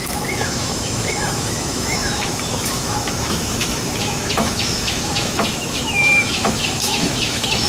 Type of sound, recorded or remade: remade